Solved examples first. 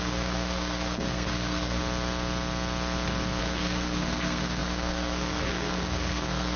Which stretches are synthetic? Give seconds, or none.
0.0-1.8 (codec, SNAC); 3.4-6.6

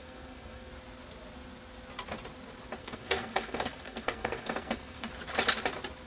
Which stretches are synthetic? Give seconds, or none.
0.0-0.7 (codec, SNAC); 2.8-5.1

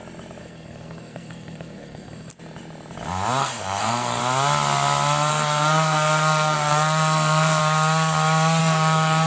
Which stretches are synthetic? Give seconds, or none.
0.4-2.3 (codec, SNAC); 3.4-4.2; 5.3-7.6; 8.6-9.3

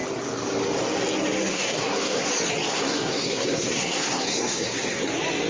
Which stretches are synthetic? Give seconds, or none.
1.5-2.3 (codec, SNAC); 2.7-5.0

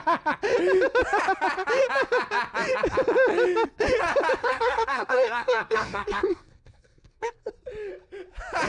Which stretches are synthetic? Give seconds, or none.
4.4-7.5 (codec, SNAC)

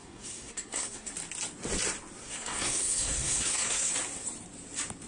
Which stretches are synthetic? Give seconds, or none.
0.0-1.1 (codec, SNAC); 2.2-3.9

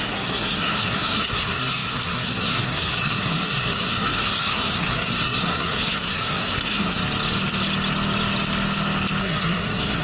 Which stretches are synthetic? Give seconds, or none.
0.0-7.0 (codec, SNAC); 9.2-10.0